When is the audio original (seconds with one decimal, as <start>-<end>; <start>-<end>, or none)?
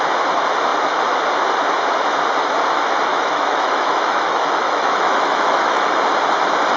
0.0-3.1; 6.0-6.8